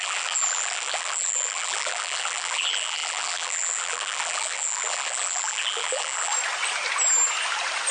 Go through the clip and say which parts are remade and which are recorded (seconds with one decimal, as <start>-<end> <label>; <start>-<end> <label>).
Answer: 0.0-6.3 remade; 6.3-7.9 recorded